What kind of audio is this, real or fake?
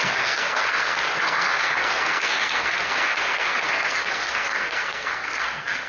fake